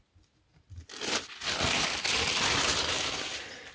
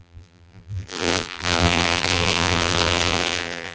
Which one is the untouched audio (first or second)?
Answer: first